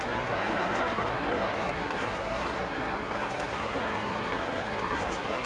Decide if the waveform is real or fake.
fake